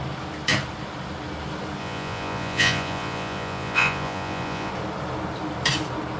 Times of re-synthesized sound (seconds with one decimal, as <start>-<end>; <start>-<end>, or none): 1.8-4.7